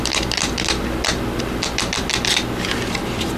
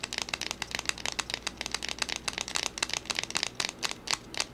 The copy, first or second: first